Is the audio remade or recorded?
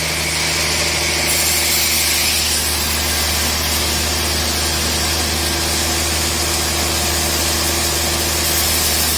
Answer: recorded